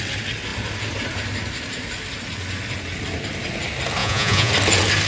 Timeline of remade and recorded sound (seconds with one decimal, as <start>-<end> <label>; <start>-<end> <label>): 0.0-4.0 recorded; 4.0-4.5 remade; 4.5-5.1 recorded